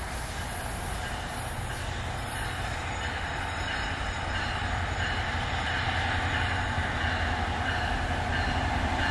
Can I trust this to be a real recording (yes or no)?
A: yes